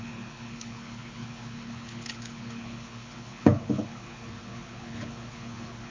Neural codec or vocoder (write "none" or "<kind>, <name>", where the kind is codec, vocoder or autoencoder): codec, HILCodec